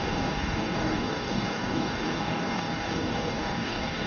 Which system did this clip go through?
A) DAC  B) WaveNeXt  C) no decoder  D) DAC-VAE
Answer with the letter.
A